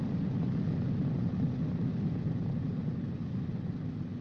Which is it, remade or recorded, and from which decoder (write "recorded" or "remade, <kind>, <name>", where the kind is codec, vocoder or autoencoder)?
recorded